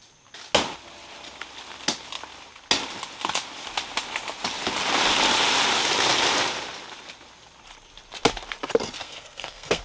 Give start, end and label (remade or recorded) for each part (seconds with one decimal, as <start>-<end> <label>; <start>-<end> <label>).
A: 0.0-9.0 recorded; 9.0-9.8 remade